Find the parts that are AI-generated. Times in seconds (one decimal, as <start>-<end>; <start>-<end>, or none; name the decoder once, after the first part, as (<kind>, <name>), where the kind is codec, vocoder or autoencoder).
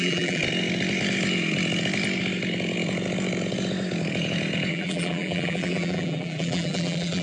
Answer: 0.0-0.4 (vocoder, BigVGAN v2); 4.7-7.2